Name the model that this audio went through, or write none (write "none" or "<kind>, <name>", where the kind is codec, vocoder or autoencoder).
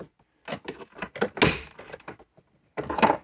none